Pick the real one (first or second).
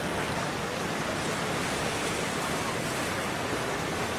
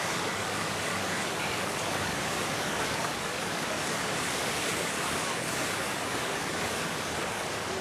first